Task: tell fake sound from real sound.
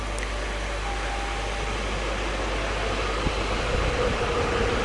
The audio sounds real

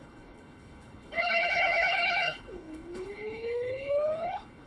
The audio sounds fake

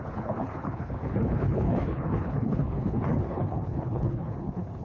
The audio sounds fake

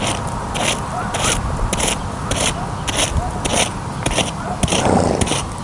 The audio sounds real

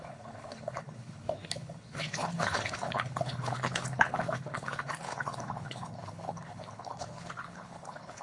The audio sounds fake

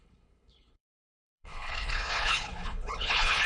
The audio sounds fake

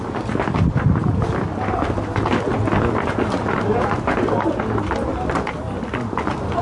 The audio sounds real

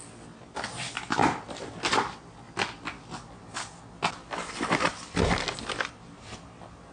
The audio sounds real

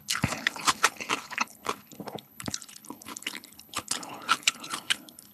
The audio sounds fake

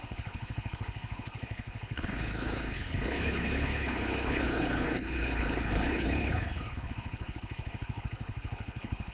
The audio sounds fake